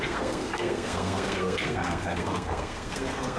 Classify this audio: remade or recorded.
remade